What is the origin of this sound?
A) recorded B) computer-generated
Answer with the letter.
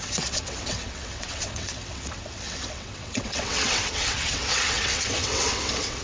B